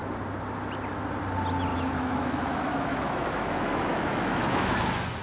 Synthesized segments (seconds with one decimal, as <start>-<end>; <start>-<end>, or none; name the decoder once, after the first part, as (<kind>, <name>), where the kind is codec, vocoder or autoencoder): 1.7-4.8 (autoencoder, DAC-VAE)